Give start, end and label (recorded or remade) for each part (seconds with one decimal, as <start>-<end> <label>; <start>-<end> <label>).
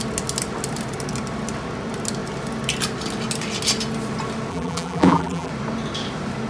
0.0-4.5 recorded; 4.5-5.5 remade; 5.5-6.5 recorded